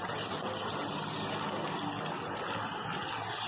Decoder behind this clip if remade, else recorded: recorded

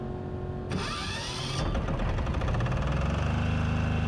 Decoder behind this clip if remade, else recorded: recorded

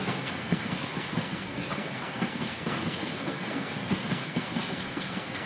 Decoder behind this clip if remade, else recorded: remade, codec, SNAC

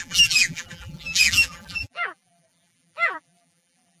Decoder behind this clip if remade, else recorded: remade, vocoder, BigVGAN v2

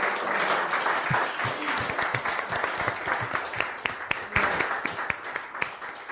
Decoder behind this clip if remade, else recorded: recorded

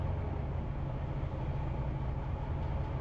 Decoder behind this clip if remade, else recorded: recorded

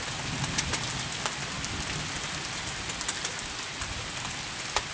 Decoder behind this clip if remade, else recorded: recorded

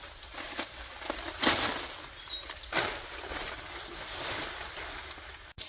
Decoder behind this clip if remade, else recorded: recorded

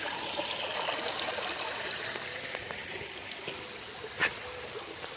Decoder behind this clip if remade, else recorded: recorded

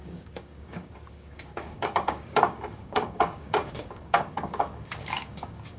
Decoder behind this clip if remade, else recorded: remade, codec, DAC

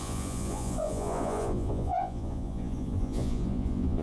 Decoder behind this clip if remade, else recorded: remade, vocoder, Vocos